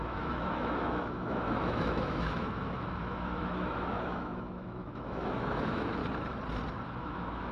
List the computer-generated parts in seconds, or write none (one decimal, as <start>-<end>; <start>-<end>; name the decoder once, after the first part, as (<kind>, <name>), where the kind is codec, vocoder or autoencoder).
0.0-6.0 (autoencoder, DAC-VAE); 7.0-7.5